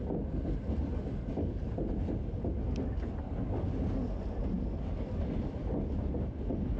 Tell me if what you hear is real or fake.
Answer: real